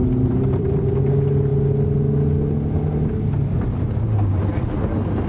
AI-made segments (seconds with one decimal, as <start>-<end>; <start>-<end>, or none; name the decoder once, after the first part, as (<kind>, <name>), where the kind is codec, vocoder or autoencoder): 0.0-1.0 (vocoder, BigVGAN v2)